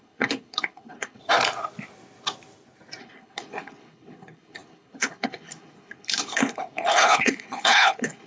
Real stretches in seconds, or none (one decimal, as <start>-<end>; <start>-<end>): 1.2-3.0